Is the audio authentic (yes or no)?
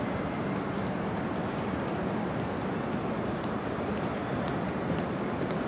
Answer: yes